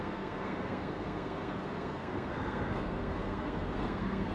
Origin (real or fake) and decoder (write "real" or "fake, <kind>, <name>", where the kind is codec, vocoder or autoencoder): fake, codec, SNAC